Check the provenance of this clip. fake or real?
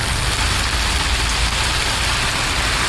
real